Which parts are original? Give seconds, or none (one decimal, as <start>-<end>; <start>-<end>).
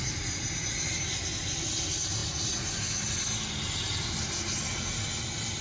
0.0-5.6